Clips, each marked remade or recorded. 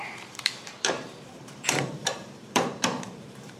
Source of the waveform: remade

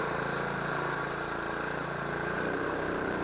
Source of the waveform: remade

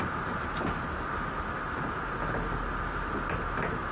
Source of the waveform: recorded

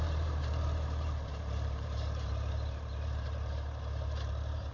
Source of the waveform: remade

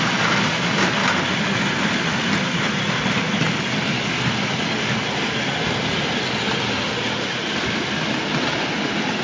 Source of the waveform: recorded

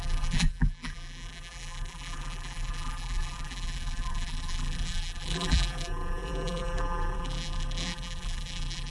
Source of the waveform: remade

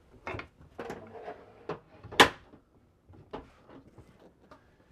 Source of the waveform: recorded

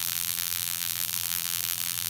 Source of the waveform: remade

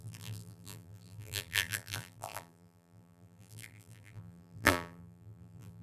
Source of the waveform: remade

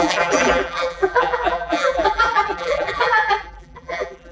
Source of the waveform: remade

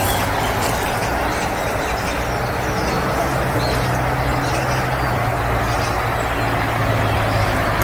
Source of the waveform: recorded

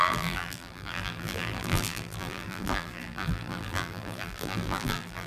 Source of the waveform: remade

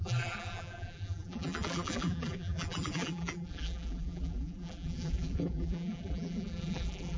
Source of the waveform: remade